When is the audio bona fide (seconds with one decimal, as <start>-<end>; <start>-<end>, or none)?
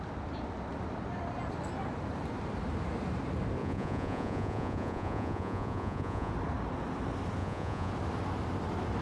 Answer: 0.0-3.6; 6.3-7.4; 7.9-9.0